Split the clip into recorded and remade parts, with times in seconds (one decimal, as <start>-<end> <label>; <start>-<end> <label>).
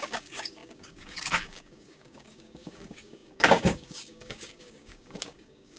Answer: 0.0-5.8 remade